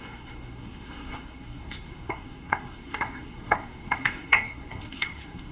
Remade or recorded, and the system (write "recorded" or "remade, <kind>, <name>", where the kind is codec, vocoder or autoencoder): remade, codec, SNAC